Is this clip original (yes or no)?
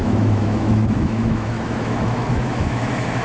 no